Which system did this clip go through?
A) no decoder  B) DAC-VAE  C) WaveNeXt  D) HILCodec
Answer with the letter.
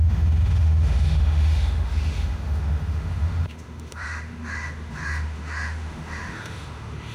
B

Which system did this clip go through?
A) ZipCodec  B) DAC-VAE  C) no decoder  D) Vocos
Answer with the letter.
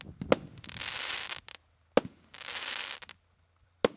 C